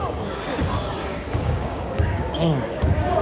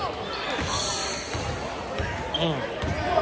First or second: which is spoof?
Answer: first